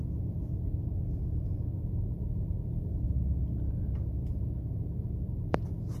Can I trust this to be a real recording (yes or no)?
yes